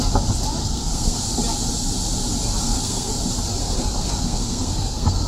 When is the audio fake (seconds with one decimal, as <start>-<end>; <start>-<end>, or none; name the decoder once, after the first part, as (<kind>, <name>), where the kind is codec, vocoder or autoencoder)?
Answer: 0.6-1.2 (codec, SNAC); 2.6-3.1; 3.6-5.3